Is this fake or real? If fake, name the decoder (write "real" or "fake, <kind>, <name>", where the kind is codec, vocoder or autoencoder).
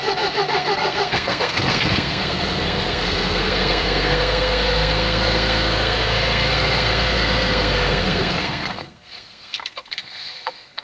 fake, codec, SNAC